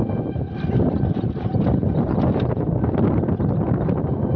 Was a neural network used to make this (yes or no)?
no